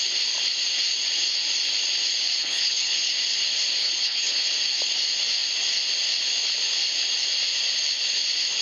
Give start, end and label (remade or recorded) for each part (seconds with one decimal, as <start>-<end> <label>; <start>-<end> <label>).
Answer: 0.0-2.4 recorded; 2.4-3.1 remade; 3.1-3.8 recorded; 3.8-4.5 remade; 4.5-8.6 recorded